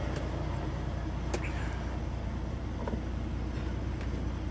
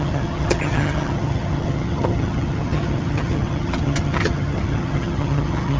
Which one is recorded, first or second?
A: first